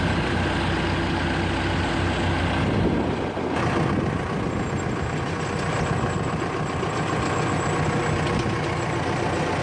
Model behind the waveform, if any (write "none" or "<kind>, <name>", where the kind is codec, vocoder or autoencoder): none